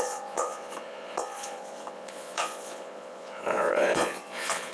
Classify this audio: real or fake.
fake